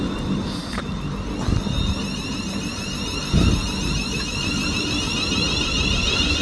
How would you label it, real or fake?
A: real